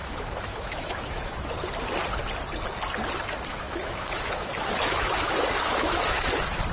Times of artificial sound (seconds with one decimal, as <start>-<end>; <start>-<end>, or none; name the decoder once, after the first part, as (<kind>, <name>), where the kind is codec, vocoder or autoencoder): 0.0-1.5 (autoencoder, DAC-VAE); 3.5-6.0